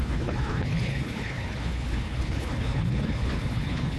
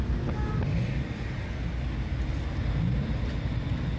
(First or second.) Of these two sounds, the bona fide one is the second